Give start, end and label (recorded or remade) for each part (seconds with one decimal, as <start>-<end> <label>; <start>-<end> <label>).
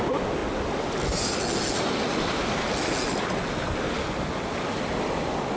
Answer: 0.0-5.6 recorded